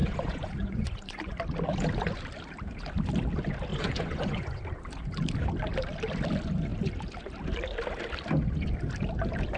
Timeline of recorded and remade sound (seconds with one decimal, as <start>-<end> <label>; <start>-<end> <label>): 0.0-1.3 remade; 1.3-3.7 recorded; 3.7-4.6 remade; 4.6-9.6 recorded